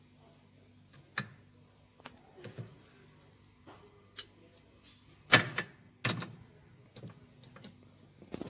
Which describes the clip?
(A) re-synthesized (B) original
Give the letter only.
B